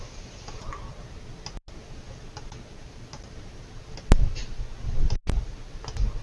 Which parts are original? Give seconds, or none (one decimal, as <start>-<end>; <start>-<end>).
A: 0.0-6.2